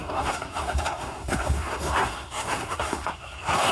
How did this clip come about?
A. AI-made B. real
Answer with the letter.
A